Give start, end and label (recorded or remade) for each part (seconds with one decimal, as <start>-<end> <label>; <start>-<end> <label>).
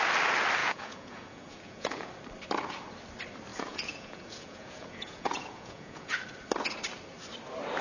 0.0-0.6 recorded; 0.6-2.1 remade; 2.1-3.5 recorded; 3.5-6.2 remade; 6.2-7.8 recorded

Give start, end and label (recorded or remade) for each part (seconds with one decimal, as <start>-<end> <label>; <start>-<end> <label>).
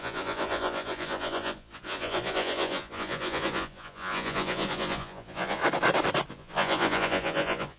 0.0-5.6 remade; 5.6-6.3 recorded; 6.3-7.8 remade